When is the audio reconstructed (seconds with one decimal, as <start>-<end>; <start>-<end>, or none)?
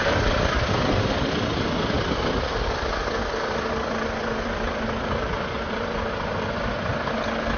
2.5-7.1